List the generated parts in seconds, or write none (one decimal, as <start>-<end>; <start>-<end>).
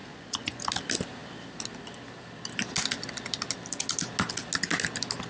0.0-0.6